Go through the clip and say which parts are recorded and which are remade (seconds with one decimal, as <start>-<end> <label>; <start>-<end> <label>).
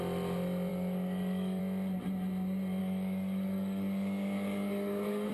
0.0-0.7 recorded; 0.7-1.6 remade; 1.6-2.8 recorded; 2.8-5.3 remade